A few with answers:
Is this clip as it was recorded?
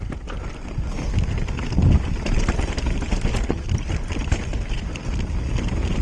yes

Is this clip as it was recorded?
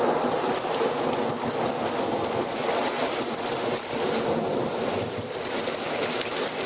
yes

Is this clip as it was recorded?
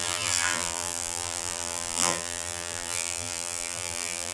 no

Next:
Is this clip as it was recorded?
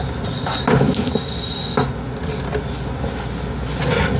yes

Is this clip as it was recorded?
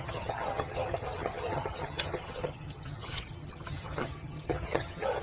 no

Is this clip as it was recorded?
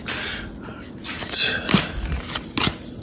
yes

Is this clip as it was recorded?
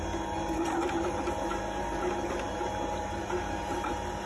yes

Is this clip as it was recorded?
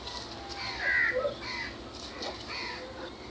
yes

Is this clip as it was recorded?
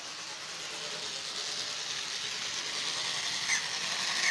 yes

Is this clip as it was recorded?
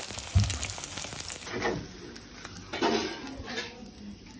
yes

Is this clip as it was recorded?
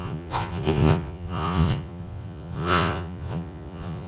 no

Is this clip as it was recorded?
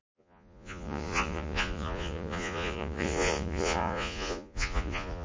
no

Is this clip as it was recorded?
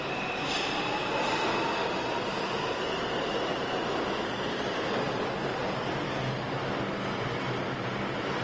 yes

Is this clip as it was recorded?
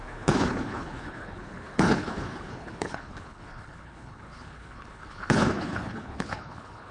no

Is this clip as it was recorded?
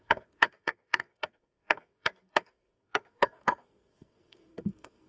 no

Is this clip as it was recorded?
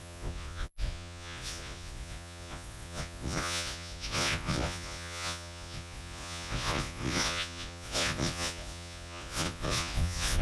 no